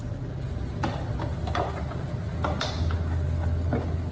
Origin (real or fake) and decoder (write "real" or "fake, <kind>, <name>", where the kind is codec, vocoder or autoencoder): real